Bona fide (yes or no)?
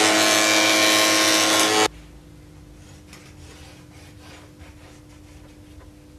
yes